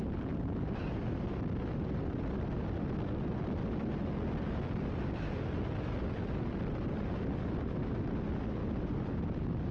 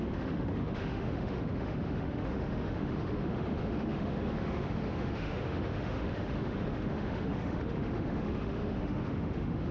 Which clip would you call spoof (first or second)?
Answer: second